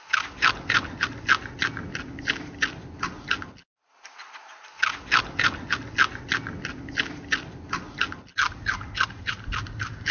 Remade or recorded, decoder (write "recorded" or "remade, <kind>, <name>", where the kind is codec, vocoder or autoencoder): recorded